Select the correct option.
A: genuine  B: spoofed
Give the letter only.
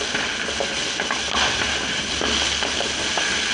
A